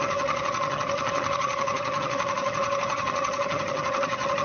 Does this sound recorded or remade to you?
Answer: remade